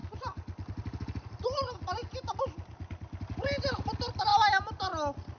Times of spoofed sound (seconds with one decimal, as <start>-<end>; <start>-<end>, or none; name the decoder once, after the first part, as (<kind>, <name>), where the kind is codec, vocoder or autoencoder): none